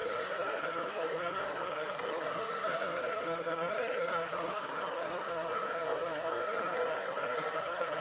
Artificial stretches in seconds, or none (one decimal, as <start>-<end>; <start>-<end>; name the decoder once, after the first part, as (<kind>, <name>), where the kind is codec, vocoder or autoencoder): 0.0-8.0 (codec, SNAC)